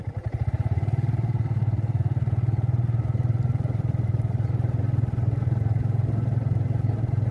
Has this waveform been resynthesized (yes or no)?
yes